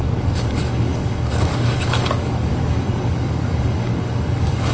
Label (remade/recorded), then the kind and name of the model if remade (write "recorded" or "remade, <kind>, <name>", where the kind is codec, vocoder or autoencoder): remade, codec, DAC